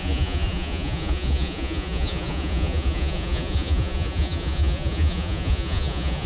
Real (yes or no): no